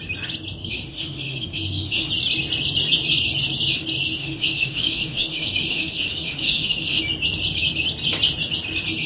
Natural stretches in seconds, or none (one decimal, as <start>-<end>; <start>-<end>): 0.0-0.6; 2.1-4.1; 7.0-9.1